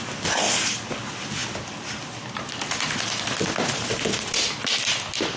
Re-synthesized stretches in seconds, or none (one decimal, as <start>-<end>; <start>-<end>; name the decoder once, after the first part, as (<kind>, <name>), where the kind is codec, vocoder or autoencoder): none